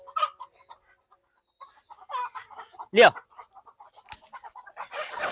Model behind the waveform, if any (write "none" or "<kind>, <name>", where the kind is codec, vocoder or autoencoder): none